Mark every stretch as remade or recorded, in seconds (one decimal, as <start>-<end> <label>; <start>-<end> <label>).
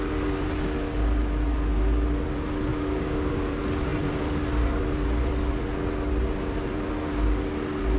0.0-2.7 recorded; 2.7-3.4 remade; 3.4-8.0 recorded